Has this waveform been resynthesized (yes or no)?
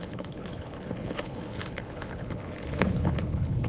yes